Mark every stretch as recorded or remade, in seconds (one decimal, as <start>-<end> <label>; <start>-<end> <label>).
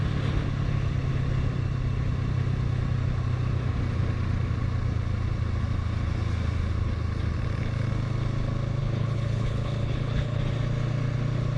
0.0-8.8 recorded; 8.8-10.4 remade; 10.4-11.6 recorded